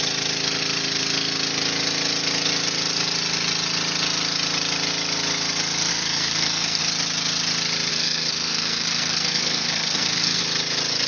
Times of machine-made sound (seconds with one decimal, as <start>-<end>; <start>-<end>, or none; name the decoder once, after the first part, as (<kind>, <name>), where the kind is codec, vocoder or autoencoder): 5.9-6.8 (codec, SNAC); 7.9-10.4